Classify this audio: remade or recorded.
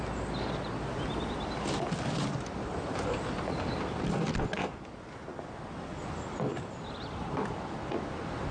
recorded